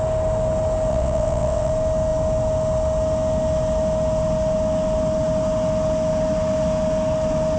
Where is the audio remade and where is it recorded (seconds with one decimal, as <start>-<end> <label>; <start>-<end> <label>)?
0.0-0.9 recorded; 0.9-1.7 remade; 1.7-7.6 recorded